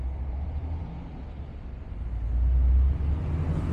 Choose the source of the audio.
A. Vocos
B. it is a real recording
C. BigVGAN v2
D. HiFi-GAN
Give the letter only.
B